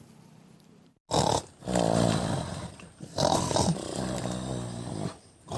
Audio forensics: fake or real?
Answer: real